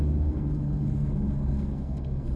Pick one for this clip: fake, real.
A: fake